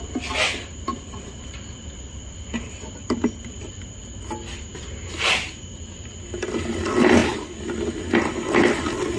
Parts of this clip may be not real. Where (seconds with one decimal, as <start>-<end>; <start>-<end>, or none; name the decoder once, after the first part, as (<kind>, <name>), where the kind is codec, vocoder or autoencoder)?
none